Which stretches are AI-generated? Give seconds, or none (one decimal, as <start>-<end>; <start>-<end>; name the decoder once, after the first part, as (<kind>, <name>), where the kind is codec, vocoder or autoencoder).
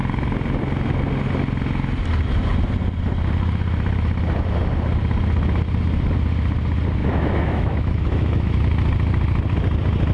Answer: 7.0-8.6 (autoencoder, DAC-VAE)